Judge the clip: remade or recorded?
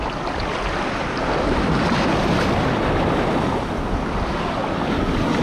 recorded